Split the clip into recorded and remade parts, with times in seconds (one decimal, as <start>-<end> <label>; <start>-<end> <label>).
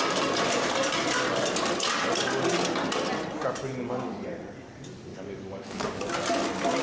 0.0-5.1 recorded; 5.1-6.0 remade; 6.0-6.8 recorded